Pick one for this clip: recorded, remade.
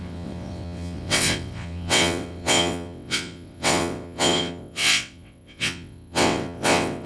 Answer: remade